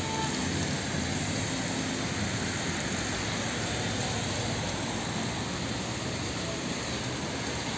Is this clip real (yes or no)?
yes